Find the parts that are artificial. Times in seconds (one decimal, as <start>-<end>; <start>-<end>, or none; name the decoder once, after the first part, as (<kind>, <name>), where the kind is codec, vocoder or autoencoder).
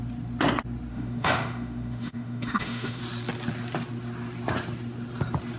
0.9-3.0 (autoencoder, DAC-VAE)